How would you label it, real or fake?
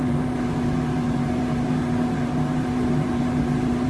fake